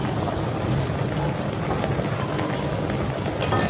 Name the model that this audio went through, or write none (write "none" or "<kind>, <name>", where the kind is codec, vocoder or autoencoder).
none